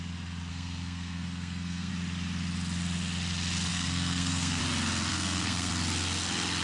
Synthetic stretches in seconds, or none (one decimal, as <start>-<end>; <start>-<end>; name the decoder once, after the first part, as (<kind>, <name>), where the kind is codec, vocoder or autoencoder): 0.5-1.9 (codec, SNAC); 3.7-4.6; 5.1-5.7